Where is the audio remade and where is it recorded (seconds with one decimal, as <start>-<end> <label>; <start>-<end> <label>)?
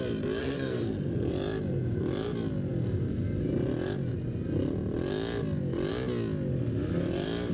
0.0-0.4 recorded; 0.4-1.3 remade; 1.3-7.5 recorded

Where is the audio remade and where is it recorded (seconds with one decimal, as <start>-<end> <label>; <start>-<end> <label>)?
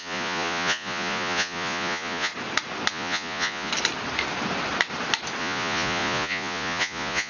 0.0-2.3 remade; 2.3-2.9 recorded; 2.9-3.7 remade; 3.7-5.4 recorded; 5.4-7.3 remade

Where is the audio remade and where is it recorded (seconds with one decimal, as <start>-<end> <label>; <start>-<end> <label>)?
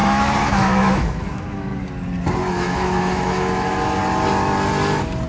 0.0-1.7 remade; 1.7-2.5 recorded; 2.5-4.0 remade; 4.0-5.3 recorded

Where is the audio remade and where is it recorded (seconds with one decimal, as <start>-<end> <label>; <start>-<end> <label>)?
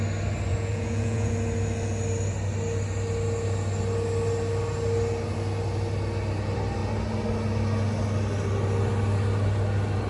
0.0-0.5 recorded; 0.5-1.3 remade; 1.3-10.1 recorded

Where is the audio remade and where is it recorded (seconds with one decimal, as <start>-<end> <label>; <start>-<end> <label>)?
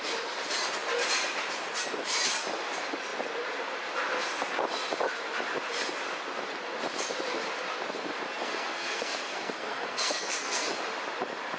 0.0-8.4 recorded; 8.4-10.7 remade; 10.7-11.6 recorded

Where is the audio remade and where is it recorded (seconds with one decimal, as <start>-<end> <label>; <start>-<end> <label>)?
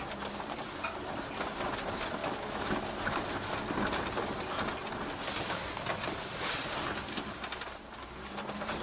0.0-2.2 recorded; 2.2-2.8 remade; 2.8-8.8 recorded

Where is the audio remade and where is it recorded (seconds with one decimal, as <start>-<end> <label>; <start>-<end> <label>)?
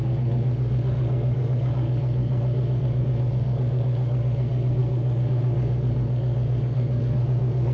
0.0-7.7 remade